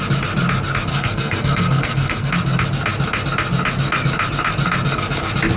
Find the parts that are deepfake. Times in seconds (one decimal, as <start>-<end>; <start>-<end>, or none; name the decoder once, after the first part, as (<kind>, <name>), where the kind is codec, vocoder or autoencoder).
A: 0.9-2.3 (codec, SNAC)